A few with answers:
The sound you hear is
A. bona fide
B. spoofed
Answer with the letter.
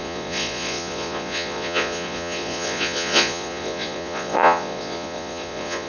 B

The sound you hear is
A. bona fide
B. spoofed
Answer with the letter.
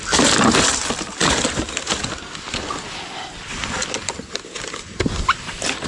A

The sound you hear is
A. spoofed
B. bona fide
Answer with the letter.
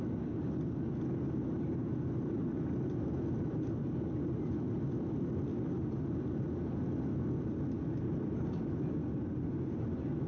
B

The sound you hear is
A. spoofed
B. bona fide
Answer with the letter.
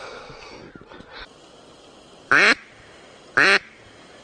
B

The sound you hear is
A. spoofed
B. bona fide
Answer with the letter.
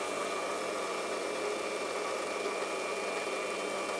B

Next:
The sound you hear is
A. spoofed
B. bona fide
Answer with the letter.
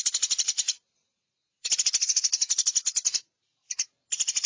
B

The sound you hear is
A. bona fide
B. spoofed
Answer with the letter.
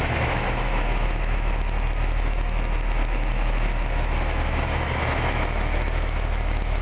B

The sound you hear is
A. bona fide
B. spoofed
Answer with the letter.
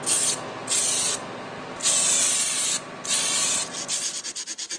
A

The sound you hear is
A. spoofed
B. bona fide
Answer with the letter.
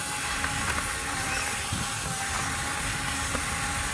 B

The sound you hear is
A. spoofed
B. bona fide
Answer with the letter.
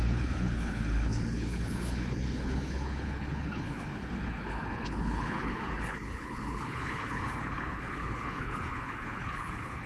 A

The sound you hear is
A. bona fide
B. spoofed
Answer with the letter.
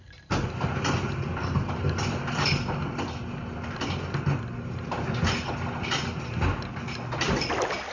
A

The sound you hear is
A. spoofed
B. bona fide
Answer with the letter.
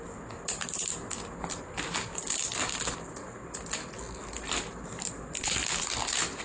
B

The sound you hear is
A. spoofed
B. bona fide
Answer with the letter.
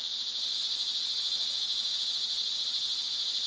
A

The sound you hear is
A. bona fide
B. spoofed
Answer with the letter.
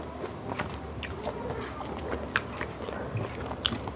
B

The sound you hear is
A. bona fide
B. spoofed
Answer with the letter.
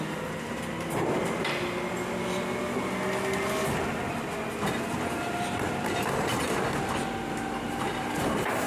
A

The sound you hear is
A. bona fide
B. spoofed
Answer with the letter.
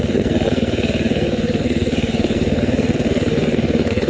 B